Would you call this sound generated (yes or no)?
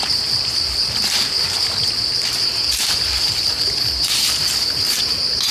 no